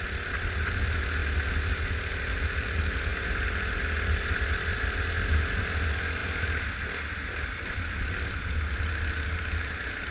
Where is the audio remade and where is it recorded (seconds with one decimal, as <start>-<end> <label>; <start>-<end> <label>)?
0.0-10.1 recorded